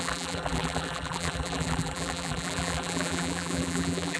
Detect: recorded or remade remade